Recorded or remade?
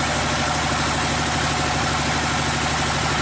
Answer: recorded